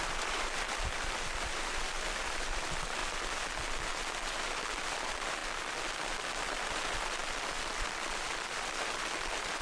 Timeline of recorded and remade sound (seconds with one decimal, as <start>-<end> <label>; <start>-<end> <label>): 0.0-3.0 remade; 3.0-3.9 recorded; 3.9-5.4 remade; 5.4-6.4 recorded; 6.4-7.2 remade; 7.2-7.8 recorded; 7.8-9.6 remade